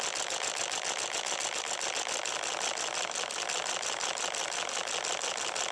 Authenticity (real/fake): real